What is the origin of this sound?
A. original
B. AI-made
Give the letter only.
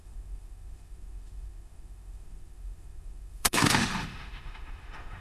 B